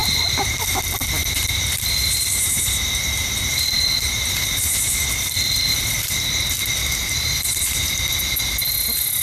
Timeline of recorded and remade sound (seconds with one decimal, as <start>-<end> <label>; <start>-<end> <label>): 0.0-1.2 recorded; 1.2-4.8 remade; 4.8-6.8 recorded; 6.8-8.2 remade; 8.2-9.2 recorded